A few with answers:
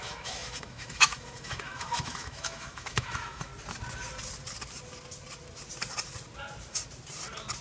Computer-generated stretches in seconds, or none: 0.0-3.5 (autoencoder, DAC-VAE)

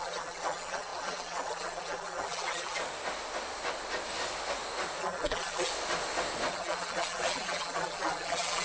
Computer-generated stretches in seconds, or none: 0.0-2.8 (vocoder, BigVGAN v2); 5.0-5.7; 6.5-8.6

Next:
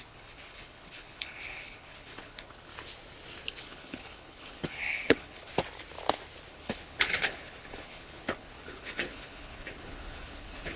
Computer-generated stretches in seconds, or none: 0.0-2.7 (codec, HILCodec); 3.6-5.5; 6.5-10.8

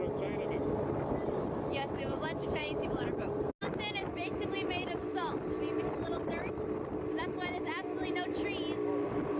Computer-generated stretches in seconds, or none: 2.6-3.5 (vocoder, BigVGAN v2); 4.8-5.3

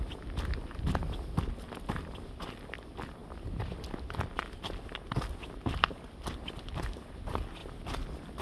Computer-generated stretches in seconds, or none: none

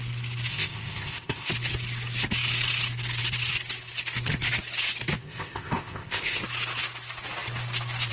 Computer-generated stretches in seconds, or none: 0.5-1.5 (codec, ZipCodec); 5.2-6.4